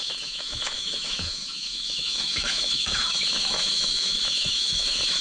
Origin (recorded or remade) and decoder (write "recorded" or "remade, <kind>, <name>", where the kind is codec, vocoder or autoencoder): remade, autoencoder, DAC-VAE